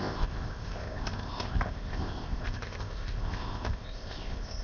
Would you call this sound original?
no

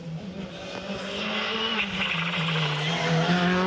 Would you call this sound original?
yes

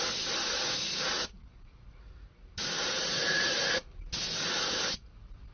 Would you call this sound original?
yes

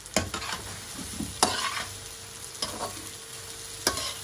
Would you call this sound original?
yes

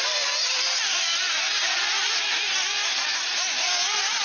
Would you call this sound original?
yes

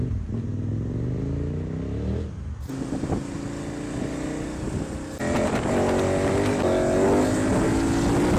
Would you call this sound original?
yes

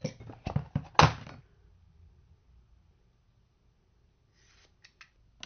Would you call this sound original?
yes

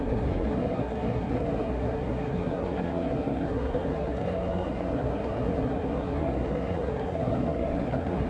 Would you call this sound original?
no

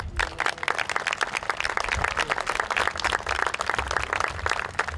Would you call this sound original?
yes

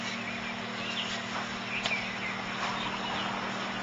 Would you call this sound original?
yes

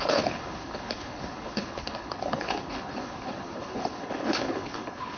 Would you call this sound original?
no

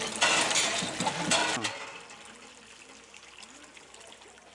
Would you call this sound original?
yes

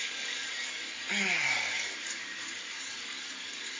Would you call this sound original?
no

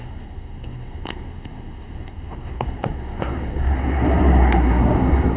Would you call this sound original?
no